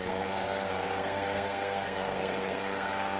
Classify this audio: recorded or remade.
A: remade